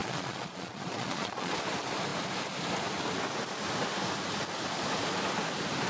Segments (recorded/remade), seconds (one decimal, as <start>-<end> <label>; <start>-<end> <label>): 0.0-1.5 remade; 1.5-5.9 recorded